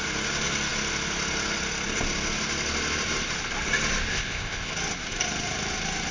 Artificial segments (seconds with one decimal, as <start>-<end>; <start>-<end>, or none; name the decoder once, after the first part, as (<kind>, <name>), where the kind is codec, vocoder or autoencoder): 4.1-4.7 (codec, ZipCodec)

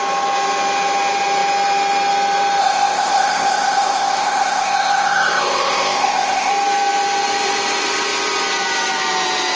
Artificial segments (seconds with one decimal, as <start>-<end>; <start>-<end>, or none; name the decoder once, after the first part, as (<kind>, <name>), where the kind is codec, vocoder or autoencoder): 2.6-6.5 (codec, ZipCodec)

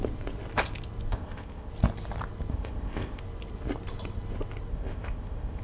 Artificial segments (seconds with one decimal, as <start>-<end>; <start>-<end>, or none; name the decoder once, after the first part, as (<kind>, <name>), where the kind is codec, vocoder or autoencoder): 1.1-1.7 (codec, ZipCodec); 2.5-3.2; 4.7-5.6

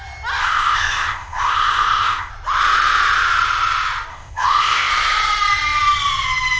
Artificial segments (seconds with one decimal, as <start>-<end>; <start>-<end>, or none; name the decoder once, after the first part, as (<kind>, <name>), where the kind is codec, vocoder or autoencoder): 0.4-2.3 (codec, ZipCodec); 4.1-4.9

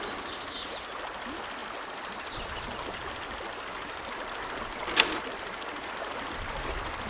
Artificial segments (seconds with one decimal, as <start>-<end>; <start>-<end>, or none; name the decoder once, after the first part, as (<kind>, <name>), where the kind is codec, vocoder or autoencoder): none

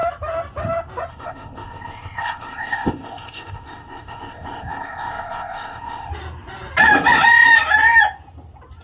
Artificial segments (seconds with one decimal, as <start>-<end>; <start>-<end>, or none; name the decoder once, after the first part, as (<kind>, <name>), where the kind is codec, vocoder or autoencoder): 1.1-6.1 (codec, ZipCodec)

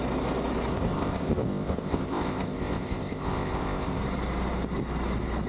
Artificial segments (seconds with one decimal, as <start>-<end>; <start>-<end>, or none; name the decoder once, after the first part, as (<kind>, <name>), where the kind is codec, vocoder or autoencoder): 0.7-4.0 (codec, ZipCodec)

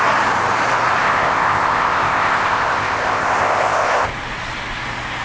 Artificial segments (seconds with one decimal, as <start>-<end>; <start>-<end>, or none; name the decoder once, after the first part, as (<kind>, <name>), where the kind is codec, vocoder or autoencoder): 1.0-4.1 (codec, ZipCodec)